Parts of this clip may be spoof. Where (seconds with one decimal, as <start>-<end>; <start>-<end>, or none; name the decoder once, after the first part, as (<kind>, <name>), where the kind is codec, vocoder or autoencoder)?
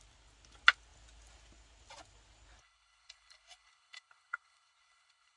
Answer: 2.6-5.4 (codec, HILCodec)